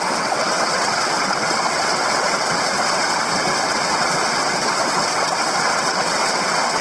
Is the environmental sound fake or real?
fake